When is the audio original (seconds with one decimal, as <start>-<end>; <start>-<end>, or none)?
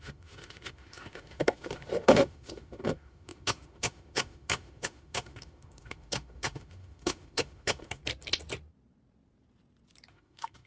8.0-10.1